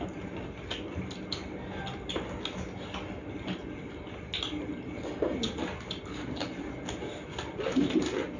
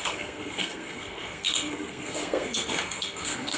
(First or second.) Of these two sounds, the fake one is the second